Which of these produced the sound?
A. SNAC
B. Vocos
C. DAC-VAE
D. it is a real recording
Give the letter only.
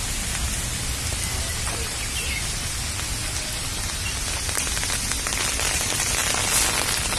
D